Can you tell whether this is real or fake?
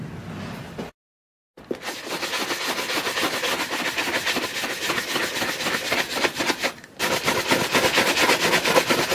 real